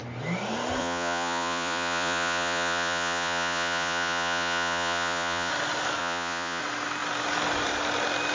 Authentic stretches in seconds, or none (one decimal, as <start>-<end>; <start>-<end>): 0.0-0.8; 5.5-6.0; 6.6-8.3